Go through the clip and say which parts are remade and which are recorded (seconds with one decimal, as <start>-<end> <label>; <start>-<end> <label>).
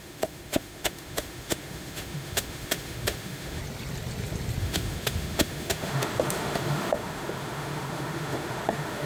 0.0-3.6 remade; 3.6-4.6 recorded; 4.6-9.1 remade